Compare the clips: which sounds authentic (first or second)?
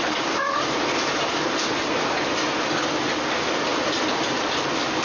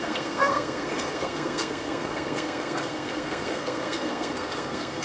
first